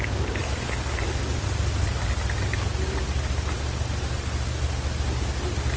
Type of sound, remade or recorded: recorded